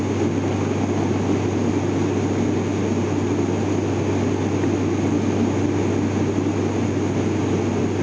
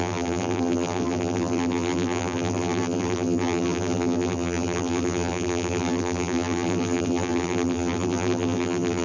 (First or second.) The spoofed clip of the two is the second